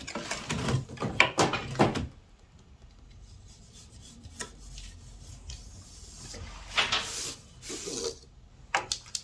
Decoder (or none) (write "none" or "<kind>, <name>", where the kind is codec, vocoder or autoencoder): none